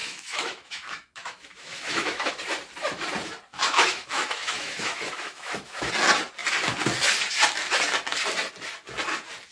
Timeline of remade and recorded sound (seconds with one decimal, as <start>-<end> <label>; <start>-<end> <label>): 0.0-2.3 remade; 2.3-3.5 recorded; 3.5-5.9 remade; 5.9-9.5 recorded